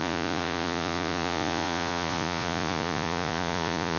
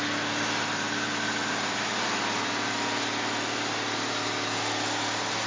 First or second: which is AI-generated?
first